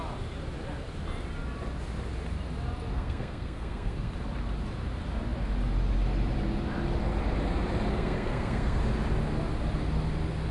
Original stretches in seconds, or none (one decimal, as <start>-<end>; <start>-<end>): 0.0-2.9; 4.1-7.9; 8.8-10.5